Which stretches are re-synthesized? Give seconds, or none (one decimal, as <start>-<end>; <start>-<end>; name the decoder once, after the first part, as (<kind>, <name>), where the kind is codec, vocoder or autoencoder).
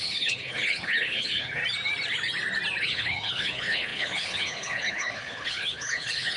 0.0-1.6 (codec, HILCodec); 2.8-6.4